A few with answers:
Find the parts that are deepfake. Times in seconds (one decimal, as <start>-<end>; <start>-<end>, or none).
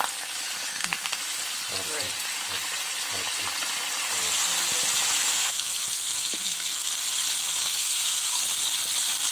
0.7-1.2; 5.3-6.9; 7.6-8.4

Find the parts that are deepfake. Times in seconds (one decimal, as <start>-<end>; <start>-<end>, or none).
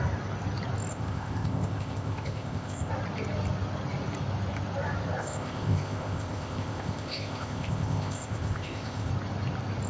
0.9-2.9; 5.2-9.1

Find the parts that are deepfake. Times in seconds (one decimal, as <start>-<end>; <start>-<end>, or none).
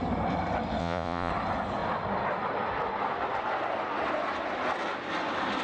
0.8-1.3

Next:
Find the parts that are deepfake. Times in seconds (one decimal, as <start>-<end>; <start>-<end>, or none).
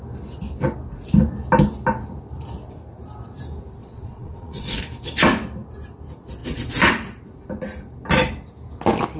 3.8-4.8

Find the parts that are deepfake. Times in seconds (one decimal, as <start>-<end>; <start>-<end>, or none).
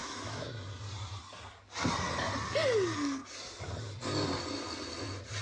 0.0-0.5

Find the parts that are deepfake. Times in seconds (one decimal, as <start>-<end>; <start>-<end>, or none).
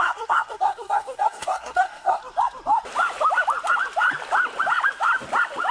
0.0-2.2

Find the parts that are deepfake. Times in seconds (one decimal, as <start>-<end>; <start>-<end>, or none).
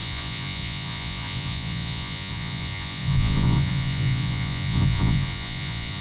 0.0-6.0